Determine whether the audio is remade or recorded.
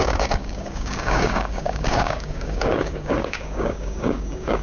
remade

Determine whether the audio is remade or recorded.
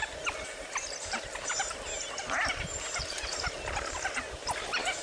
recorded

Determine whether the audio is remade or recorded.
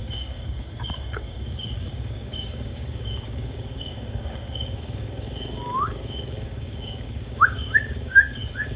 remade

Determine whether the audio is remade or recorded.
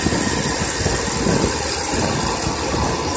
recorded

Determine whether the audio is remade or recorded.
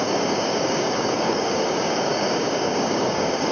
remade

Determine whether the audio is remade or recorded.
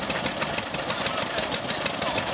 recorded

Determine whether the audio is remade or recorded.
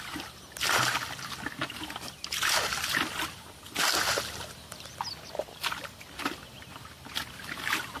recorded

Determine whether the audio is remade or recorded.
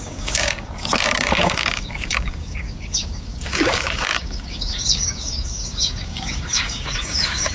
remade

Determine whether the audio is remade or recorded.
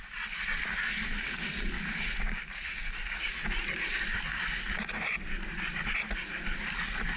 recorded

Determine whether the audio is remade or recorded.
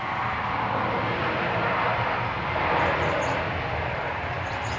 recorded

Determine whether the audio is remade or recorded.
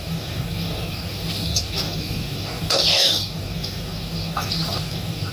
remade